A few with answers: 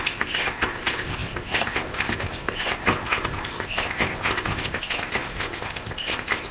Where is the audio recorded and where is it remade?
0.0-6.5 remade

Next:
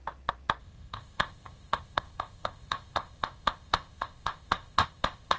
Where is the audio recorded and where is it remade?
0.0-0.6 recorded; 0.6-5.4 remade

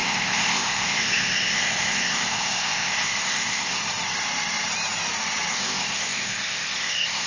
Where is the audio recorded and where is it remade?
0.0-3.8 remade; 3.8-5.5 recorded; 5.5-7.3 remade